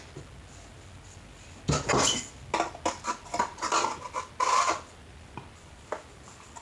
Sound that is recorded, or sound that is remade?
recorded